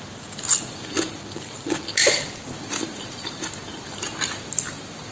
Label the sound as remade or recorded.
recorded